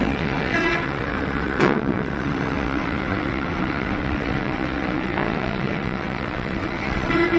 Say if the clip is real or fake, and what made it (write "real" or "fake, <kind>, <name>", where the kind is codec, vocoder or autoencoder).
fake, vocoder, WaveNeXt